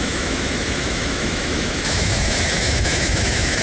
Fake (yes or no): yes